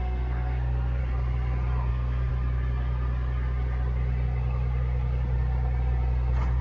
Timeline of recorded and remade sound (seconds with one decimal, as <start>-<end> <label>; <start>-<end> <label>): 0.0-1.0 remade; 1.0-1.9 recorded; 1.9-2.3 remade; 2.3-6.6 recorded